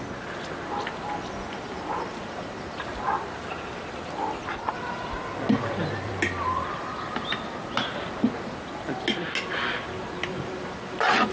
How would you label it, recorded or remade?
recorded